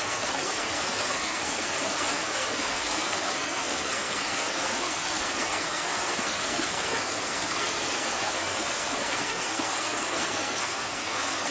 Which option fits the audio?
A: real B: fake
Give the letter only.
B